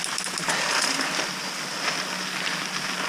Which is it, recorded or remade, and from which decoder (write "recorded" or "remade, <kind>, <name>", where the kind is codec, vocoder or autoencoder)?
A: recorded